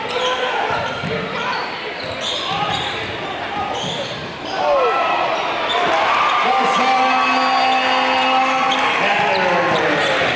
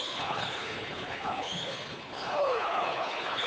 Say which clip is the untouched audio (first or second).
first